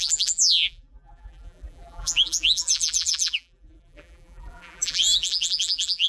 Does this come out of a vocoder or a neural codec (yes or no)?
yes